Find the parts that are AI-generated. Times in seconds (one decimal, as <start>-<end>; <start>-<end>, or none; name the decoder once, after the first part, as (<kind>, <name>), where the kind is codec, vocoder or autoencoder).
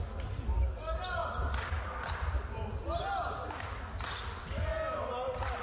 none